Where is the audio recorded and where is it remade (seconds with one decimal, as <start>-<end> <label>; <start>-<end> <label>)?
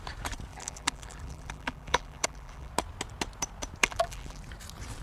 0.0-0.5 recorded; 0.5-2.7 remade; 2.7-3.8 recorded; 3.8-4.4 remade; 4.4-5.0 recorded